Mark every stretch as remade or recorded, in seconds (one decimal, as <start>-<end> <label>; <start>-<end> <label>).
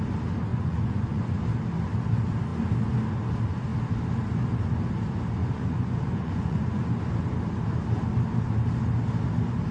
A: 0.0-0.5 recorded; 0.5-1.4 remade; 1.4-5.4 recorded; 5.4-6.8 remade; 6.8-9.7 recorded